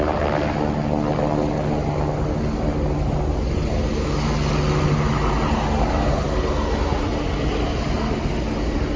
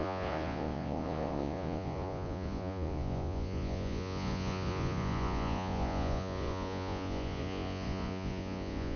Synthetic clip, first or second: second